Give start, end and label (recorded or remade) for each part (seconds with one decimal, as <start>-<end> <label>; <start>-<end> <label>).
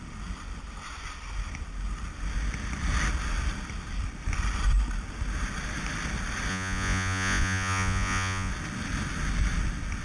0.0-6.5 recorded; 6.5-8.5 remade; 8.5-10.0 recorded